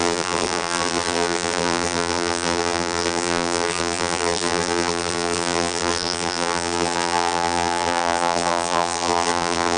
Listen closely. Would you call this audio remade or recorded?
remade